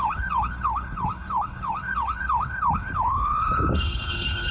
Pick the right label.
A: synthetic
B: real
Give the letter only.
A